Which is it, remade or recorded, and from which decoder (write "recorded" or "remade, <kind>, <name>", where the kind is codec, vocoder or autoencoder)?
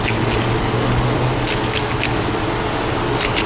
remade, codec, DAC